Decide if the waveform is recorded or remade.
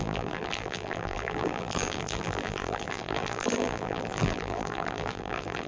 remade